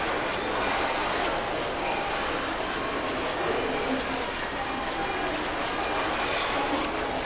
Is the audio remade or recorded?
recorded